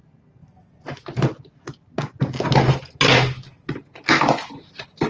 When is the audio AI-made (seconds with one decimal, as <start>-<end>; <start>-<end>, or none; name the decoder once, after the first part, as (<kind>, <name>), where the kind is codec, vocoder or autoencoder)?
none

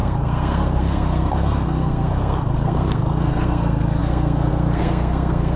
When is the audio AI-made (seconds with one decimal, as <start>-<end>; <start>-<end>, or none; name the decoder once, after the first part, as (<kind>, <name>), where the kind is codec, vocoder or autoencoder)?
0.0-5.6 (codec, SNAC)